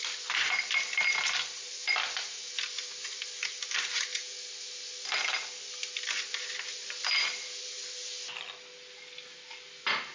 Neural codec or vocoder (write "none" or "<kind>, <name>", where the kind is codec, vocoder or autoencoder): none